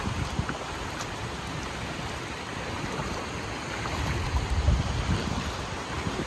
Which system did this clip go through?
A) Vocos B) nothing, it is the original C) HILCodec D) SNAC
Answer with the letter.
B